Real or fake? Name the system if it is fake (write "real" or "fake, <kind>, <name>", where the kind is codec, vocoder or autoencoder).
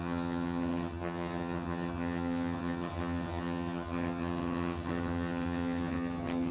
fake, vocoder, HiFi-GAN